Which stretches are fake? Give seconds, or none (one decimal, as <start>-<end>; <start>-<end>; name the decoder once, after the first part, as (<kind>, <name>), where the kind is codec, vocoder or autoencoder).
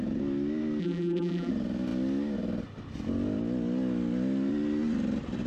0.8-1.5 (vocoder, BigVGAN v2)